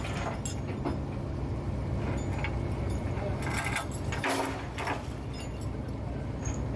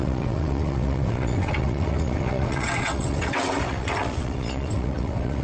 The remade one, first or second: second